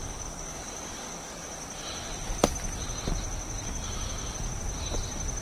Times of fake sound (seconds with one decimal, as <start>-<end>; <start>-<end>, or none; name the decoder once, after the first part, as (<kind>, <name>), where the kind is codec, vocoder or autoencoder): 0.0-1.5 (codec, DAC)